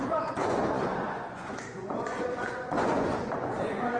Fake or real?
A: fake